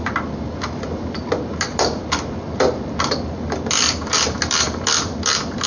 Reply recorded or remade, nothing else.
recorded